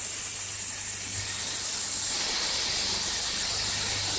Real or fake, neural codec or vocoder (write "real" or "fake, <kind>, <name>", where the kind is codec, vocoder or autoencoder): real